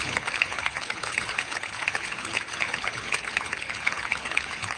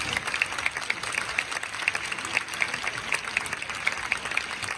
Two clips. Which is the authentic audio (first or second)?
second